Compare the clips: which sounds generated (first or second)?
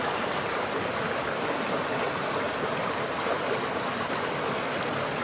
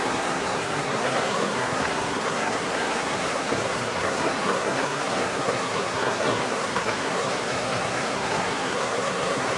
second